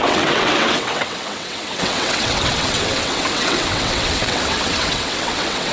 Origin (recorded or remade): remade